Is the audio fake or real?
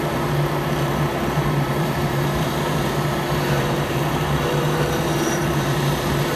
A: fake